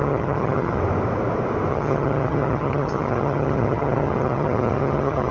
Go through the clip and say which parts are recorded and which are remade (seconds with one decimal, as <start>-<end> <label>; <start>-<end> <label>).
0.0-0.8 remade; 0.8-1.7 recorded; 1.7-5.3 remade